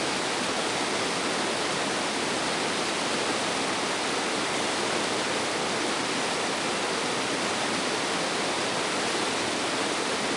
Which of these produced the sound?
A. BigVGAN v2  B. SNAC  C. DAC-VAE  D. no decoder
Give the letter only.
D